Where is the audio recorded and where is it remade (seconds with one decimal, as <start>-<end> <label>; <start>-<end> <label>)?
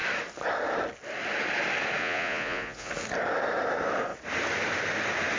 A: 0.0-2.0 recorded; 2.0-2.9 remade; 2.9-5.4 recorded